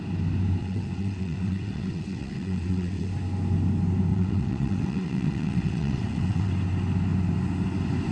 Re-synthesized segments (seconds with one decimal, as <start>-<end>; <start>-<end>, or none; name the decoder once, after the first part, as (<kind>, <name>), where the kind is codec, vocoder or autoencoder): 0.6-3.1 (vocoder, WaveNeXt); 4.1-6.5